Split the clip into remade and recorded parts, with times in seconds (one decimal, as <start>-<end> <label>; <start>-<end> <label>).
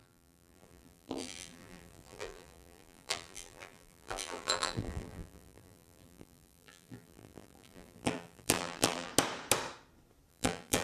0.0-9.1 remade; 9.1-10.3 recorded; 10.3-10.8 remade